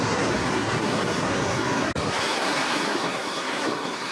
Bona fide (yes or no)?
no